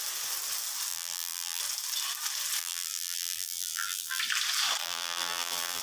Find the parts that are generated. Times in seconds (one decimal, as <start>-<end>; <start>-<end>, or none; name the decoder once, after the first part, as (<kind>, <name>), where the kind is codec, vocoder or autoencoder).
0.9-1.6 (vocoder, BigVGAN v2); 2.6-4.2; 4.8-5.8